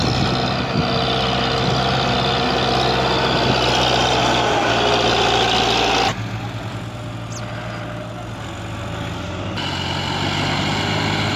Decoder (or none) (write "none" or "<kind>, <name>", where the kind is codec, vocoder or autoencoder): none